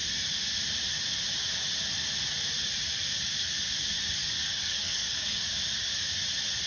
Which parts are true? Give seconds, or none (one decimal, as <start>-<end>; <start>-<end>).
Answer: 0.0-4.2; 5.4-6.7